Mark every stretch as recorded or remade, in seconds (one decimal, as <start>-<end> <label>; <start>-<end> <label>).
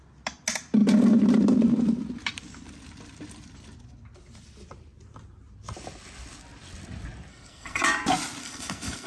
0.0-7.3 recorded; 7.3-7.8 remade; 7.8-8.4 recorded; 8.4-9.1 remade